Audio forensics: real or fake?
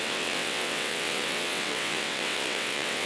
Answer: fake